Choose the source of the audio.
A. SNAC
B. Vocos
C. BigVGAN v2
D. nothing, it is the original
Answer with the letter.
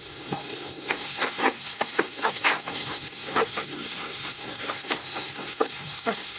A